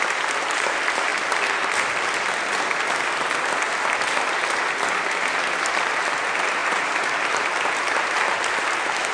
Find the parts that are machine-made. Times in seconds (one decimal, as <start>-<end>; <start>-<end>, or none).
0.0-1.1; 5.7-9.1

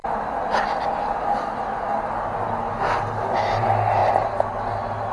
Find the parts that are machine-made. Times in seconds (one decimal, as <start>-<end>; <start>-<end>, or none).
0.0-1.8

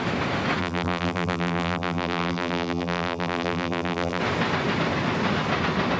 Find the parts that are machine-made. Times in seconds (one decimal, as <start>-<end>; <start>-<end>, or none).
0.6-4.2

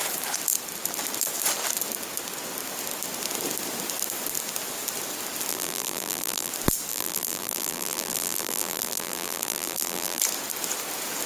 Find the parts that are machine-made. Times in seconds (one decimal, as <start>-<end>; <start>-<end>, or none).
5.5-6.5; 6.9-10.2

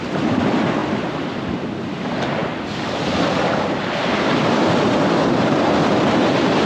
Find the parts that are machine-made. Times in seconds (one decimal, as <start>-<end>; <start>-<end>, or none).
none

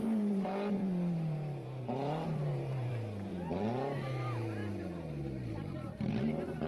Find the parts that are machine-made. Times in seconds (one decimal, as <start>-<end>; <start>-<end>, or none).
0.0-3.3; 4.6-6.7

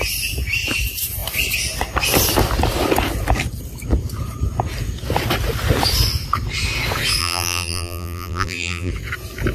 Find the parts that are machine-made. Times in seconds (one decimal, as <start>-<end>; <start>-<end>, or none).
7.2-8.9

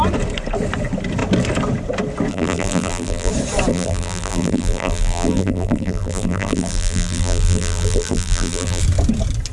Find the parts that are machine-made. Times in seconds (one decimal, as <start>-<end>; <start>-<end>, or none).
2.3-3.3; 3.7-8.8